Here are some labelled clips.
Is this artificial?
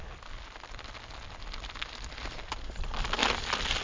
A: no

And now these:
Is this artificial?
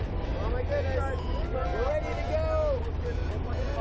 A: no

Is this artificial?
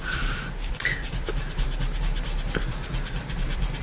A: yes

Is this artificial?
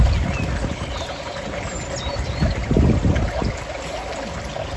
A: no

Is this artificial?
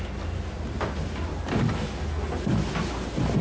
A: no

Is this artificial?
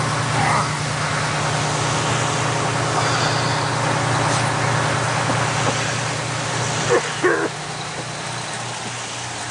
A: no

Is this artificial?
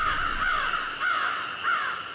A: no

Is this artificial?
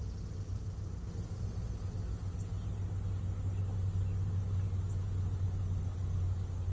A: no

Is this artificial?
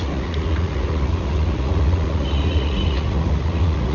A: yes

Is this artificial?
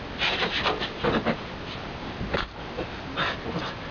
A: no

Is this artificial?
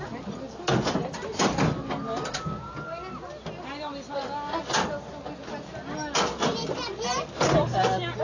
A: no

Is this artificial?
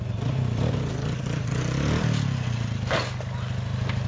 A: no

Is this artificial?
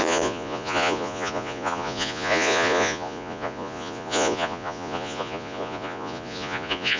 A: yes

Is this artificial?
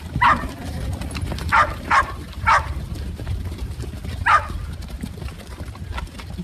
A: no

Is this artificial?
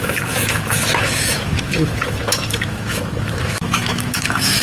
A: yes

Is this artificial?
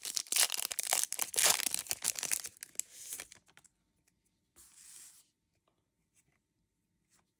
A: no